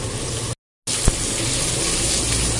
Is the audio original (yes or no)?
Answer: yes